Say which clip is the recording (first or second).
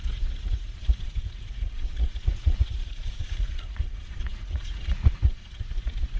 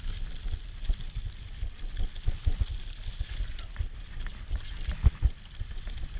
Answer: second